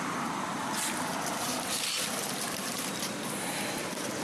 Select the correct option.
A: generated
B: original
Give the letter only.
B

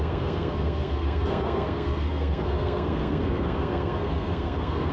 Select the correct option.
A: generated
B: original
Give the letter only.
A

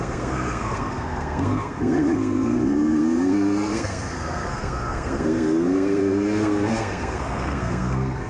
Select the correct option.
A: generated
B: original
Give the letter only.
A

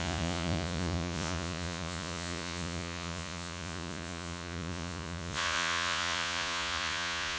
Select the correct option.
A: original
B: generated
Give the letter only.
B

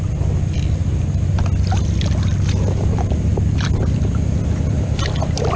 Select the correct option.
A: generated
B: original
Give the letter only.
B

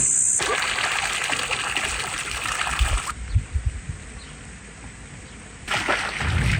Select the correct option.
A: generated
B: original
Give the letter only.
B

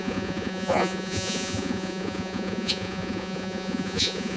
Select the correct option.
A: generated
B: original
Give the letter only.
A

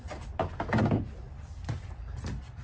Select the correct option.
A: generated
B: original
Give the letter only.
A